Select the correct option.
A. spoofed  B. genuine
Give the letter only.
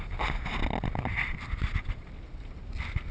B